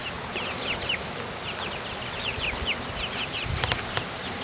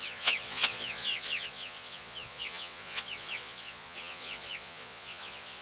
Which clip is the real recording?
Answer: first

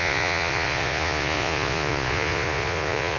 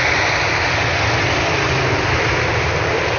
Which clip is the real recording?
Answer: second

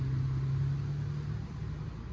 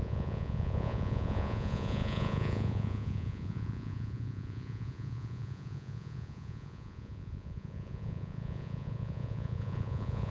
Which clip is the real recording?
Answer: first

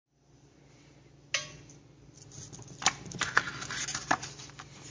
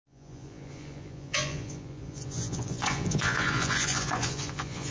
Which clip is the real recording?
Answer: first